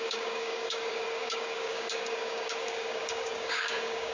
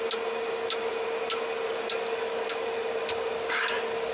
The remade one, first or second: first